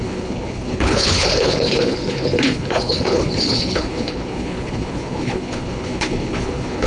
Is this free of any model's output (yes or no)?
no